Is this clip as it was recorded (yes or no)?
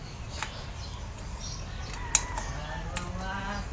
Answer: yes